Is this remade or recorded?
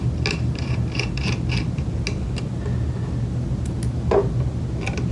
recorded